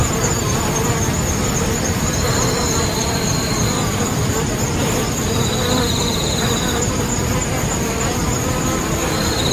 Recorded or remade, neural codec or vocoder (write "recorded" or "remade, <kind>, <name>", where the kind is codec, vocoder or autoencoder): recorded